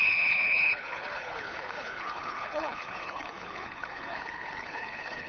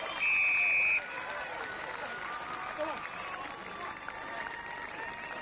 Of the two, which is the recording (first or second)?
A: second